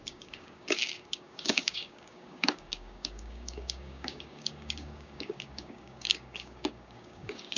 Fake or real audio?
fake